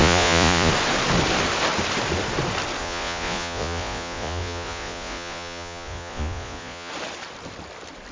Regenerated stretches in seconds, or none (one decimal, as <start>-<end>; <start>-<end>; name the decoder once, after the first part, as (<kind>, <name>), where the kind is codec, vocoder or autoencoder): 0.0-0.7 (vocoder, Vocos); 2.8-6.9